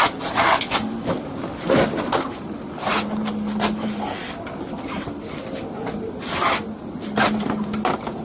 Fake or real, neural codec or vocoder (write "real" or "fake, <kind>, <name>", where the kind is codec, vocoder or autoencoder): real